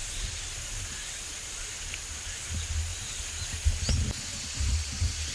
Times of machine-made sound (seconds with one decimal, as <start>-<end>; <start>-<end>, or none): 2.9-3.9